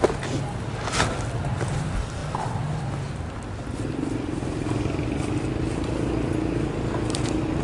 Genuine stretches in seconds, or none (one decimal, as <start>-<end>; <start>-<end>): 0.0-7.6